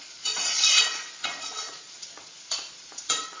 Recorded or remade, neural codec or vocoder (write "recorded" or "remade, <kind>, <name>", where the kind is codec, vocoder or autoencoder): remade, vocoder, Vocos